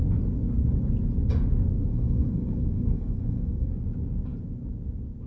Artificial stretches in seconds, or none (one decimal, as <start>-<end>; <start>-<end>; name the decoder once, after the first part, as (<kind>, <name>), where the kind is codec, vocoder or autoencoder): 1.9-3.7 (codec, SNAC)